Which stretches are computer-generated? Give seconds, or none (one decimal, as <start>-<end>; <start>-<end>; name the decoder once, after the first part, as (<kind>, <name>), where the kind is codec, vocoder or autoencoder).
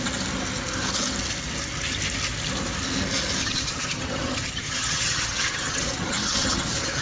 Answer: 3.4-7.0 (vocoder, HiFi-GAN)